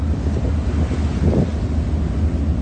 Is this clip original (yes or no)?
yes